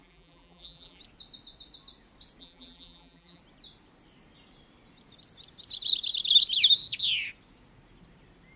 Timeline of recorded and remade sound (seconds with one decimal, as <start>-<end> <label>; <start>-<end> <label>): 0.0-1.0 remade; 1.0-2.4 recorded; 2.4-3.4 remade; 3.4-8.6 recorded

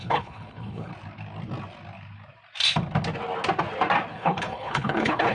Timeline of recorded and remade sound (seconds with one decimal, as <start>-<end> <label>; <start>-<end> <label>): 0.0-0.9 remade; 0.9-4.1 recorded; 4.1-5.3 remade

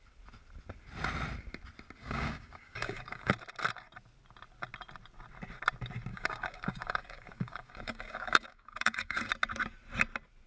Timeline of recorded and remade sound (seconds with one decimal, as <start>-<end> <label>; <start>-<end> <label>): 0.0-2.0 recorded; 2.0-3.3 remade; 3.3-6.1 recorded; 6.1-9.3 remade; 9.3-10.5 recorded

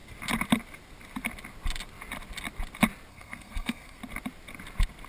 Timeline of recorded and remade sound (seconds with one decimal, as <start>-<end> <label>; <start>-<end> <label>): 0.0-3.1 recorded; 3.1-4.0 remade; 4.0-5.1 recorded

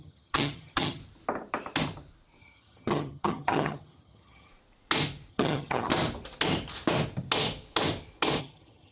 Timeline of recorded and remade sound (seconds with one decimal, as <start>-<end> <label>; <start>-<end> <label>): 0.0-1.0 remade; 1.0-2.4 recorded; 2.4-4.5 remade; 4.5-5.3 recorded; 5.3-5.9 remade; 5.9-8.4 recorded; 8.4-8.9 remade

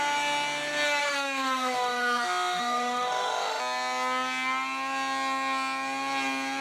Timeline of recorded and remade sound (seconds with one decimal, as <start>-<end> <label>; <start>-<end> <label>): 0.0-1.0 recorded; 1.0-3.6 remade; 3.6-6.6 recorded

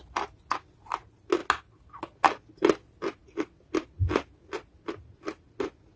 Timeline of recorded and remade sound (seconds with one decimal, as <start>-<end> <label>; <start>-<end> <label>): 0.0-0.9 remade; 0.9-6.0 recorded

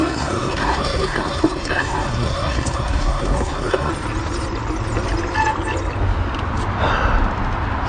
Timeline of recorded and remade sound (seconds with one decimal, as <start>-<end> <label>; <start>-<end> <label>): 0.0-3.9 remade; 3.9-7.9 recorded